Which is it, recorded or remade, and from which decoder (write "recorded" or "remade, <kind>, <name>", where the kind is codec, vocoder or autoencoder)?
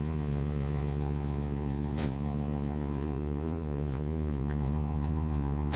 remade, vocoder, Vocos